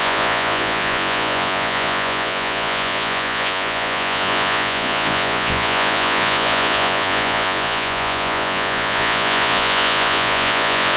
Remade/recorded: remade